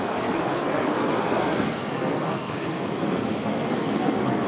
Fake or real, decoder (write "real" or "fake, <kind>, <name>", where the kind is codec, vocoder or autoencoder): fake, codec, SNAC